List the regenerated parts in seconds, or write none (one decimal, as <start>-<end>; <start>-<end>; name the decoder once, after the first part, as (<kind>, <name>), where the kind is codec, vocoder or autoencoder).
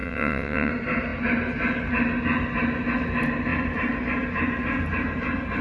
0.0-0.7 (vocoder, WaveNeXt)